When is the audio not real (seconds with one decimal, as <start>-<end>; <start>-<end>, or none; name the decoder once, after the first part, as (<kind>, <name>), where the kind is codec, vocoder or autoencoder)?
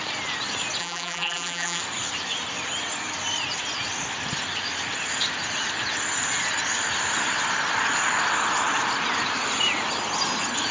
0.8-1.8 (vocoder, BigVGAN v2)